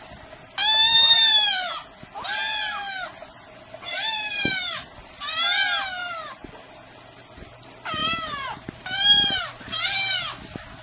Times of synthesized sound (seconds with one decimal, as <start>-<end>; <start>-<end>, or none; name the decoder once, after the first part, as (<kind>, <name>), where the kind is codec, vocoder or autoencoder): 6.0-6.7 (vocoder, BigVGAN v2); 8.0-9.8